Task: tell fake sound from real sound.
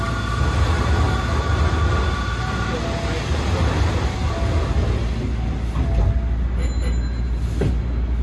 real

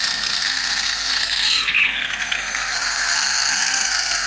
fake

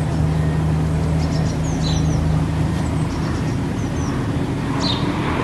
real